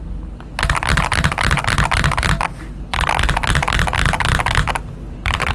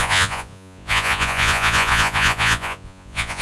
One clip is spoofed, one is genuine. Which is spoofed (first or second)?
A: second